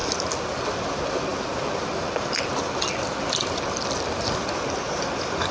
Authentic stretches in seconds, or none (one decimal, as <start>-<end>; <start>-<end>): 0.0-0.8